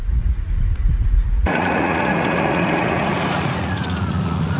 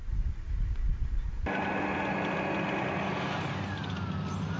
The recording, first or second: second